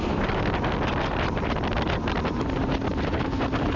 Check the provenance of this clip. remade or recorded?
recorded